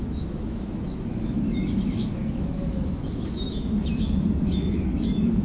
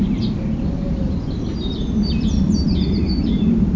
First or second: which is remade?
first